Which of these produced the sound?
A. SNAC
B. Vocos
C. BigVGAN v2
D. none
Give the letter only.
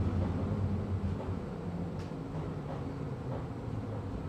D